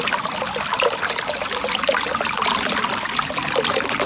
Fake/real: real